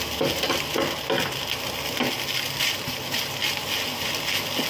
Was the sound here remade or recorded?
recorded